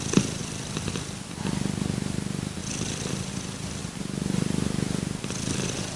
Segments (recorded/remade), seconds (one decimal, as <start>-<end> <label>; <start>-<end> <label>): 0.0-0.4 recorded; 0.4-1.4 remade; 1.4-2.6 recorded; 2.6-3.3 remade; 3.3-3.8 recorded; 3.8-5.3 remade; 5.3-6.0 recorded